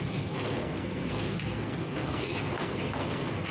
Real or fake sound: fake